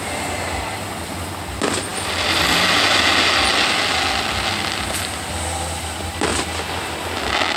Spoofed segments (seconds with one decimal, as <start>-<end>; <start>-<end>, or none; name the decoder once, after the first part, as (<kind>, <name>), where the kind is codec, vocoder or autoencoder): none